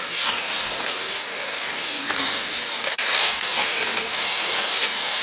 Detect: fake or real fake